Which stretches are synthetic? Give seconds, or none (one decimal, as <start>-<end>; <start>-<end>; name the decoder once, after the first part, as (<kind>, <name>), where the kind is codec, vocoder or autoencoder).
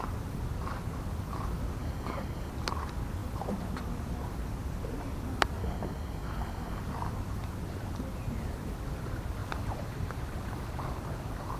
1.8-2.5 (codec, DAC); 5.6-6.8